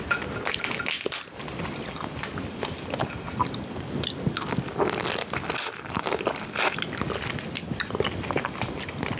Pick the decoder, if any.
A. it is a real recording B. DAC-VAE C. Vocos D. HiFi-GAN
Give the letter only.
A